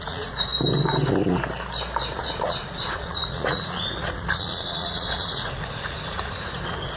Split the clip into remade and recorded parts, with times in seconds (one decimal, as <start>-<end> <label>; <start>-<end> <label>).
0.0-0.5 remade; 0.5-2.1 recorded; 2.1-7.0 remade